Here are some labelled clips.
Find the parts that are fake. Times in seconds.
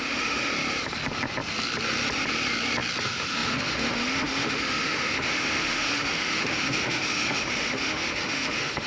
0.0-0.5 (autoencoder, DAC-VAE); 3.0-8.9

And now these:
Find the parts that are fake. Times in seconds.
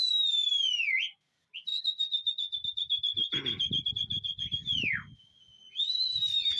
none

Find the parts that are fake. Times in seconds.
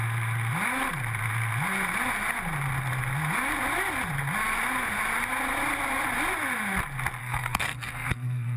7.2-8.6 (codec, SNAC)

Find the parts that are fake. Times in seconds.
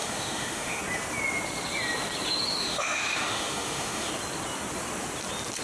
0.0-0.8 (autoencoder, DAC-VAE); 2.6-4.1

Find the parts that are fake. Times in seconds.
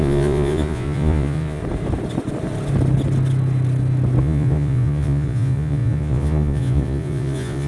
0.0-1.6 (vocoder, Vocos); 4.2-7.7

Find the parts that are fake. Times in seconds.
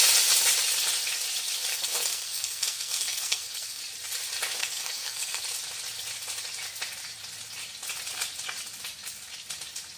1.7-3.8 (codec, SNAC); 4.6-5.4